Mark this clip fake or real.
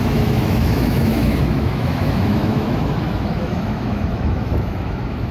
fake